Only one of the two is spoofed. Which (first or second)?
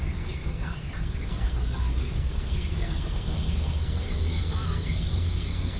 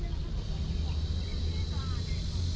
first